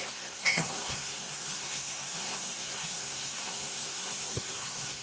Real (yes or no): no